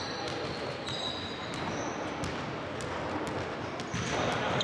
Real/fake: real